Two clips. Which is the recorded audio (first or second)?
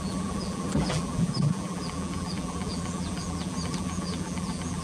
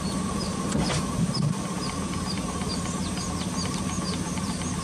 second